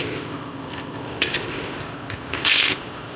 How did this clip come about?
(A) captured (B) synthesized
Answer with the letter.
B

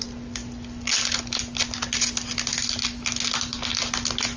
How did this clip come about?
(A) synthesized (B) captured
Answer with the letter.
B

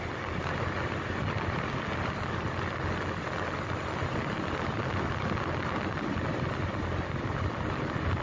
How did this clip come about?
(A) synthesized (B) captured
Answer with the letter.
B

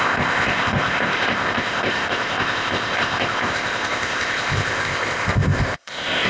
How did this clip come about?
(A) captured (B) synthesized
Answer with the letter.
B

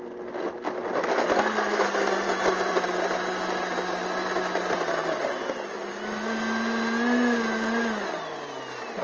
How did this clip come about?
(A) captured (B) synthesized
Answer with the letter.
A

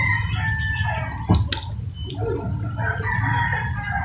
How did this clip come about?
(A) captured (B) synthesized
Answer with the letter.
A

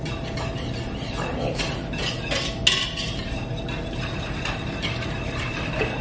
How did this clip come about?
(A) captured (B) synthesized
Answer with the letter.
A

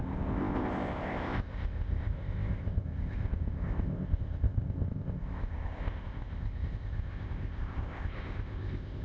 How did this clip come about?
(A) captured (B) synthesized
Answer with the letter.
B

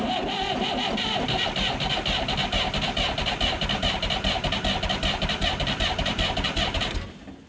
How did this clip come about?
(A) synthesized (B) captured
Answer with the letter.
B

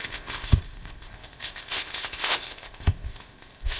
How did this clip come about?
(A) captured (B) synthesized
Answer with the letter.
B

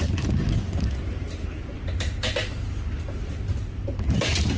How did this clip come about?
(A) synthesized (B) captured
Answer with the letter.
B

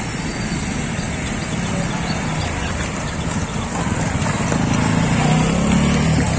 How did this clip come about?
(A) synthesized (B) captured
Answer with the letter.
B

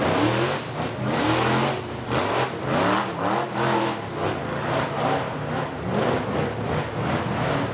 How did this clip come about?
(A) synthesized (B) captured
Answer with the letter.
B